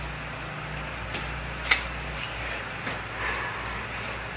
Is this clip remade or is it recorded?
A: recorded